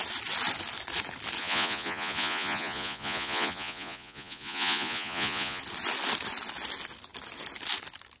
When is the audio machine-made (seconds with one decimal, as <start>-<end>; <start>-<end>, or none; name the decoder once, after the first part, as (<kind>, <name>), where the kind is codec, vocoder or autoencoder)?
1.4-5.6 (vocoder, Vocos)